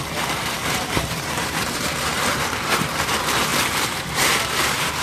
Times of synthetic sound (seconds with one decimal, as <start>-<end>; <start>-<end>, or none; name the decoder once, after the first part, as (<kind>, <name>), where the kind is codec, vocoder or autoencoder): 0.0-5.0 (vocoder, BigVGAN v2)